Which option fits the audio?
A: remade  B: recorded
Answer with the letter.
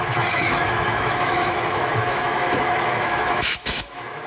A